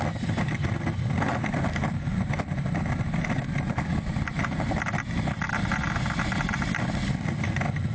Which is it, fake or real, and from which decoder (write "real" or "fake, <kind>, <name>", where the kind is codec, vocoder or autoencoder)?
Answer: real